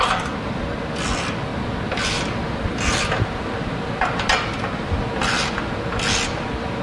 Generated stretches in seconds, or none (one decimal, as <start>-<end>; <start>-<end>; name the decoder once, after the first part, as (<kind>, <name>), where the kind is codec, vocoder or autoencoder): none